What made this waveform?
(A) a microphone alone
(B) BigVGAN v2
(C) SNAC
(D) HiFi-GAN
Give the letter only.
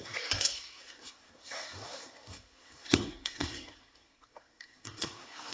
C